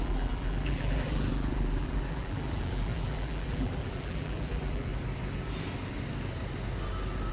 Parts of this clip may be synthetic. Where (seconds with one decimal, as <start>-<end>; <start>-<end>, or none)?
0.0-4.9